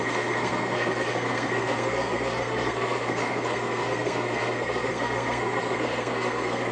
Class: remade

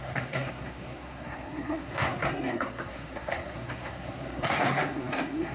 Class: remade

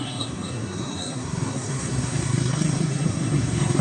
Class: remade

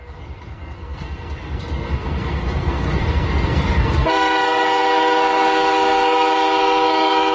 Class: remade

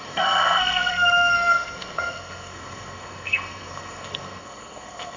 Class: remade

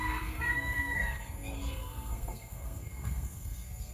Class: remade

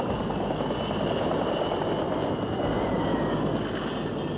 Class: recorded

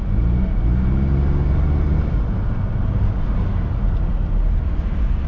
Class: recorded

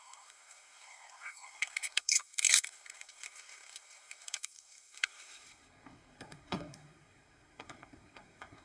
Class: remade